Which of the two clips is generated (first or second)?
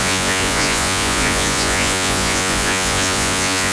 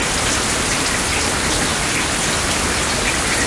first